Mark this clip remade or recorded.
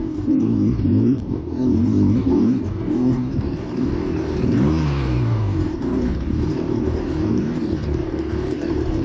remade